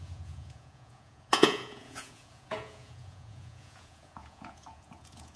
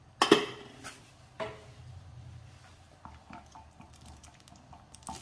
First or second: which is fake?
first